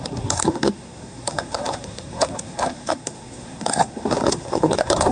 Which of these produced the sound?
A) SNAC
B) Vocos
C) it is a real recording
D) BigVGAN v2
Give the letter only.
A